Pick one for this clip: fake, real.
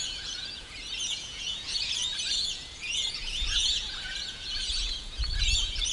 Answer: fake